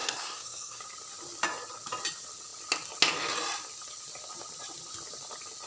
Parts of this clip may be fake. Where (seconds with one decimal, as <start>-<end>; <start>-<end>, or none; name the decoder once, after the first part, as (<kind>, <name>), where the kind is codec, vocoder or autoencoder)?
0.0-0.8 (codec, SNAC)